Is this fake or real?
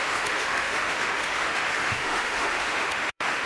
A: fake